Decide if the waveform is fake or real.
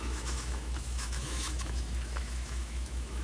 fake